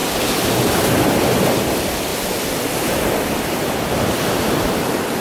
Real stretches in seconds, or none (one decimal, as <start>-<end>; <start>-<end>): 0.5-2.1